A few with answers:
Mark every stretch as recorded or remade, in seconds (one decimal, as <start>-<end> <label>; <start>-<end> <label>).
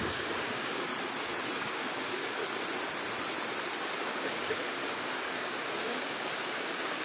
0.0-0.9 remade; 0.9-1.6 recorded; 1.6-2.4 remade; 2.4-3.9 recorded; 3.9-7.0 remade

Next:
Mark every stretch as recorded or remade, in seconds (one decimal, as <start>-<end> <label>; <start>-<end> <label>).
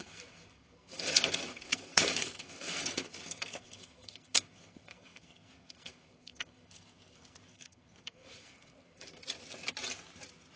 0.0-9.2 remade; 9.2-10.6 recorded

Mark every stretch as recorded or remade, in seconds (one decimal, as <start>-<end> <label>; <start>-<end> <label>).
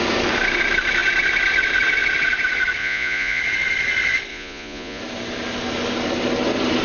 0.0-2.8 recorded; 2.8-3.4 remade; 3.4-4.3 recorded; 4.3-5.0 remade; 5.0-6.8 recorded